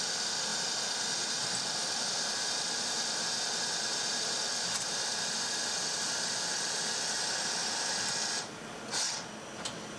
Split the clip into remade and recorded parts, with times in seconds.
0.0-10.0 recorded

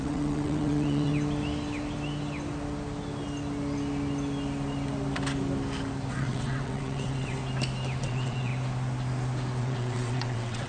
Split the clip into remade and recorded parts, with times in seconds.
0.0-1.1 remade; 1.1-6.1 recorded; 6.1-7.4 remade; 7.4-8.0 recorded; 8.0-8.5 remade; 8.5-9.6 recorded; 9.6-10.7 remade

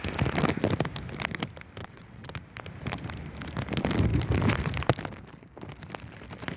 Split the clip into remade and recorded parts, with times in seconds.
0.0-1.8 recorded; 1.8-2.3 remade; 2.3-6.6 recorded

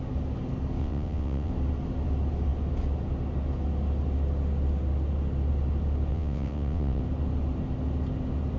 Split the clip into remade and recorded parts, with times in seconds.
0.0-0.8 recorded; 0.8-1.5 remade; 1.5-6.1 recorded; 6.1-7.0 remade; 7.0-8.6 recorded

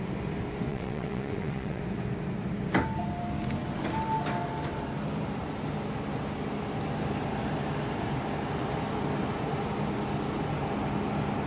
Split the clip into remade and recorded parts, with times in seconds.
0.0-0.7 recorded; 0.7-1.8 remade; 1.8-11.5 recorded

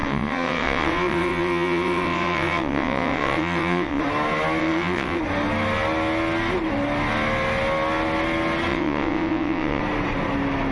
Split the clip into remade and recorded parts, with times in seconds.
0.0-4.0 remade; 4.0-4.6 recorded; 4.6-5.2 remade; 5.2-8.7 recorded; 8.7-9.8 remade; 9.8-10.7 recorded